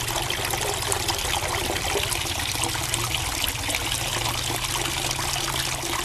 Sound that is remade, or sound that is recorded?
recorded